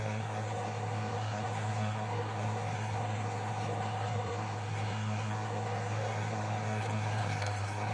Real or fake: fake